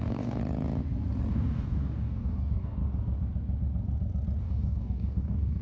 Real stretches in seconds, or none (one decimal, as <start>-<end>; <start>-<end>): 0.4-1.3; 2.8-4.4